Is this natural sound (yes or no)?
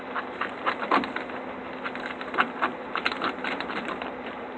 yes